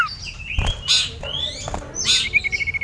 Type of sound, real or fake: real